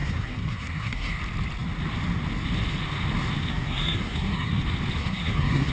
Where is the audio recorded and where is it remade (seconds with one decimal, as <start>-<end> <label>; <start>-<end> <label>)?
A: 0.0-1.2 remade; 1.2-3.5 recorded; 3.5-4.5 remade; 4.5-5.0 recorded; 5.0-5.7 remade